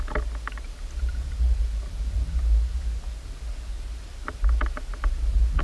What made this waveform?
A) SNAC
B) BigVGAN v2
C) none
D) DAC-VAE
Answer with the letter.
C